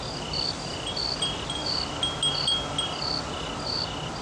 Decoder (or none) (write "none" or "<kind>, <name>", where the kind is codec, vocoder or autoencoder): none